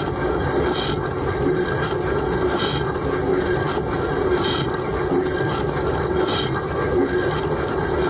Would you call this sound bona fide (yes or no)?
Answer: yes